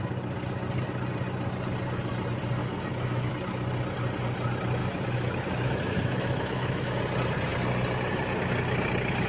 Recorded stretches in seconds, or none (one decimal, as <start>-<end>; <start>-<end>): 0.0-2.6; 3.3-4.8; 7.0-9.3